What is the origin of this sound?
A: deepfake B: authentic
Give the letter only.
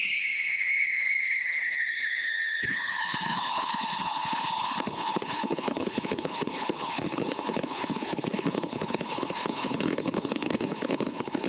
A